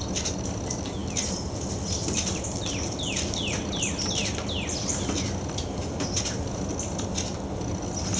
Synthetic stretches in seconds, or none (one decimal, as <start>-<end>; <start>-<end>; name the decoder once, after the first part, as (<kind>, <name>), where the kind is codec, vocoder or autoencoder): none